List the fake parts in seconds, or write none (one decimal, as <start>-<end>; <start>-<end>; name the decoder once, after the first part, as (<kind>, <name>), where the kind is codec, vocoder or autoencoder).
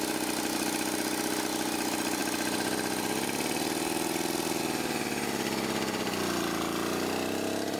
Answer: none